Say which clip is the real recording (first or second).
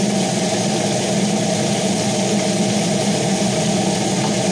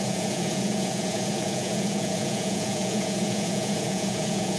first